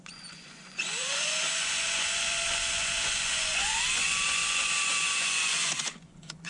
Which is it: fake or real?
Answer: fake